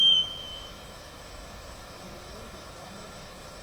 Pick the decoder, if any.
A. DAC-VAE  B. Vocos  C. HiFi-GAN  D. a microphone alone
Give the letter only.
A